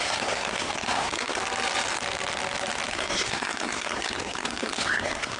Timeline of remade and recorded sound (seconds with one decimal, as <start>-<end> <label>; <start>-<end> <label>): 0.0-1.4 remade; 1.4-2.9 recorded; 2.9-5.4 remade